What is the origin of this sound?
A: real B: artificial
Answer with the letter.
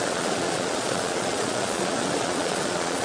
B